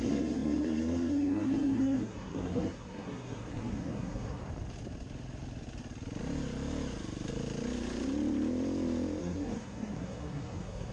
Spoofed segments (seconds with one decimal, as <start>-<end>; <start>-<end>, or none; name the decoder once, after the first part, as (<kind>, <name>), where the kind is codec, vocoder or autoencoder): 0.0-4.4 (codec, SNAC); 9.2-10.9